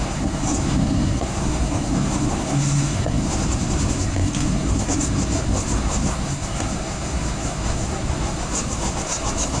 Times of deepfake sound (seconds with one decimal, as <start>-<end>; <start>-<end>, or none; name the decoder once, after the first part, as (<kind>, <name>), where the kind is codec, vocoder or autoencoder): 0.0-9.6 (codec, SNAC)